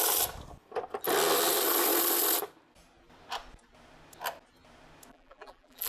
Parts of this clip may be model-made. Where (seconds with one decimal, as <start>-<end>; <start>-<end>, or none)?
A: 5.1-5.9